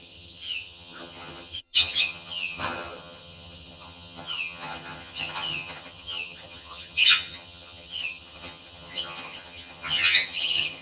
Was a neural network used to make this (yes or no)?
yes